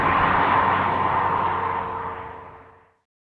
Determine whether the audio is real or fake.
real